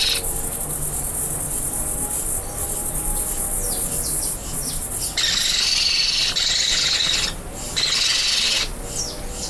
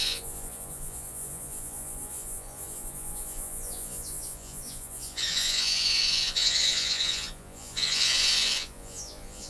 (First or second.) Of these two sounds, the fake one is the second